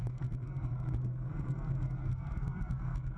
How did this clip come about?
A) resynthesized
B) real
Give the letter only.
A